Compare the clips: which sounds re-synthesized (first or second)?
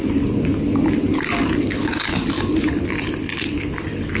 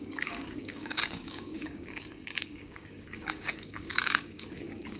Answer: second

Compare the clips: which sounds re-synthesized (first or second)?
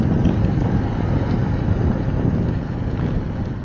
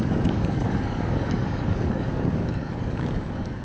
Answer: second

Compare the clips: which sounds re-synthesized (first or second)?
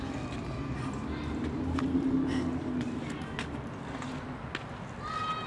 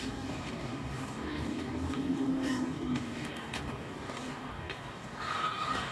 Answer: second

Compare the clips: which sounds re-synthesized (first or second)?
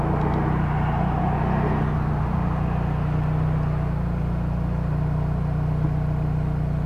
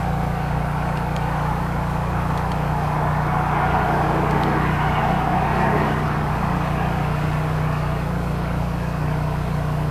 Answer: second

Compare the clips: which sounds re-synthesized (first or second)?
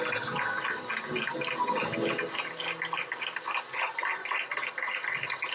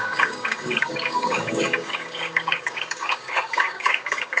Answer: second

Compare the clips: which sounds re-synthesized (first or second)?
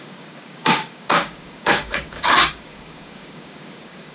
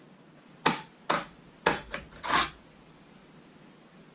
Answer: first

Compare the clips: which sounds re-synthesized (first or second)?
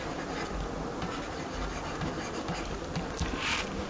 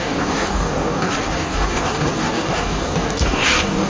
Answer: second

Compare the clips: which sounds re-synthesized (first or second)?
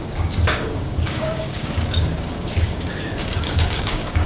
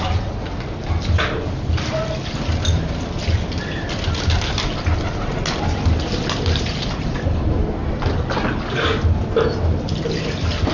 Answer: first